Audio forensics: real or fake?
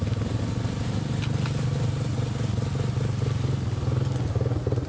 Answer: real